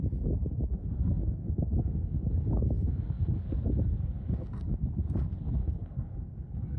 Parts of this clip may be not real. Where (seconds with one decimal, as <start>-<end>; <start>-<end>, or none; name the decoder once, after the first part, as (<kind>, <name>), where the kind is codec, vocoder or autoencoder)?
0.7-4.8 (codec, SNAC); 5.6-6.8

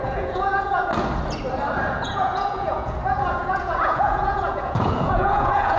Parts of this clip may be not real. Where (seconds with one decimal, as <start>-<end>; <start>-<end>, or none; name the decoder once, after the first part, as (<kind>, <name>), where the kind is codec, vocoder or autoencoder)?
0.0-0.9 (vocoder, Vocos); 1.9-5.8

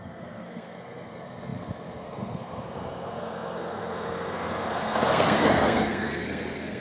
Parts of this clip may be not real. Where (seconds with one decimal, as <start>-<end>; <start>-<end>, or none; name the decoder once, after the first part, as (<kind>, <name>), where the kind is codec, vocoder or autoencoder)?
0.0-6.8 (codec, SNAC)

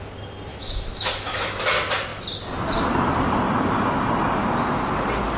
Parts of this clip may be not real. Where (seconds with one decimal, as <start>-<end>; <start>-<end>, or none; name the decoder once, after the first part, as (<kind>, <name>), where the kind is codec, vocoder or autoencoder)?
0.5-1.7 (autoencoder, DAC-VAE)

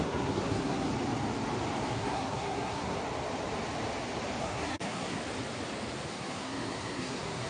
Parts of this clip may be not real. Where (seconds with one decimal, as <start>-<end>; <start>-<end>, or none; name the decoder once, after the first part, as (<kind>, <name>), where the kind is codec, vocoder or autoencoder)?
0.0-0.9 (codec, SNAC); 1.9-3.0; 4.4-5.2; 6.1-7.5

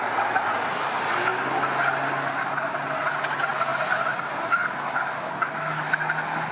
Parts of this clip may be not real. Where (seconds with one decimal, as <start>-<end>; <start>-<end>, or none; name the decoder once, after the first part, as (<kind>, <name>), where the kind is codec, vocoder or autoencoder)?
none

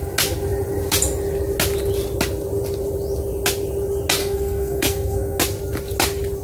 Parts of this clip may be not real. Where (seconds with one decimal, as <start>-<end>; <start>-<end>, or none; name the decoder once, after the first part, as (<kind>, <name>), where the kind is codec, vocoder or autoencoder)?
4.2-5.4 (codec, SNAC)